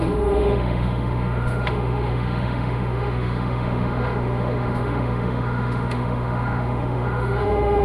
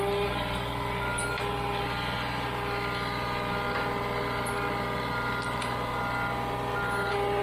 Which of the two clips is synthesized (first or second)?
first